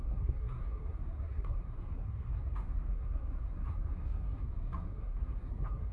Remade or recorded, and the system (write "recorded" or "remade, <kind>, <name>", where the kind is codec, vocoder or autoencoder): remade, codec, SNAC